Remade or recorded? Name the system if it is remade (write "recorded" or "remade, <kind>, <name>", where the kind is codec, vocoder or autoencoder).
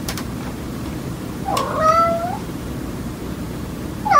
remade, vocoder, BigVGAN v2